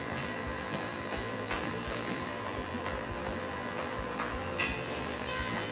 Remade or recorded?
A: remade